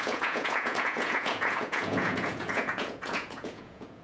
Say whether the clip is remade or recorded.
remade